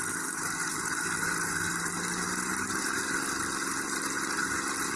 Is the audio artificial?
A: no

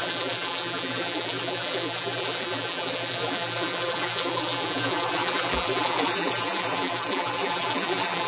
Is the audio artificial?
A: yes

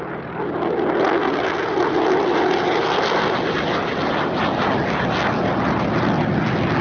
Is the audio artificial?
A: no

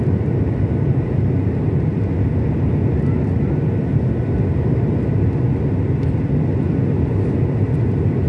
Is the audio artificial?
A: no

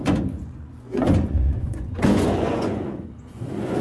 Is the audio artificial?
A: yes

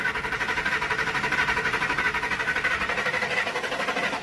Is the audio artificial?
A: no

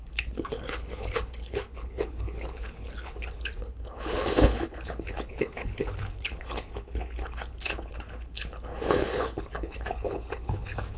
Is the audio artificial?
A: yes